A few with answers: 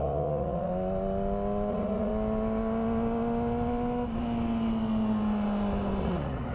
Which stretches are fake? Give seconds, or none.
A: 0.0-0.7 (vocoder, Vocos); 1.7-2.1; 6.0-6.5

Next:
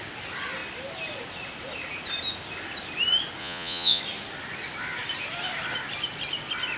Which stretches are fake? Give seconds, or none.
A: 3.4-4.0 (vocoder, Vocos)

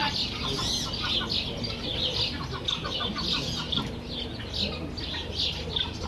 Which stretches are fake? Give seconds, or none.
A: none